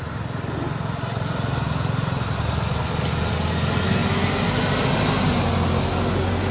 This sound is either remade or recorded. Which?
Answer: recorded